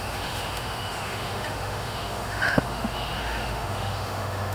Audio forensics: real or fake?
fake